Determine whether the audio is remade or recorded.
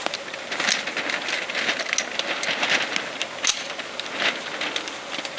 recorded